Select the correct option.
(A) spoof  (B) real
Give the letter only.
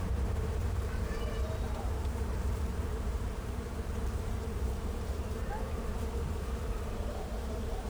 A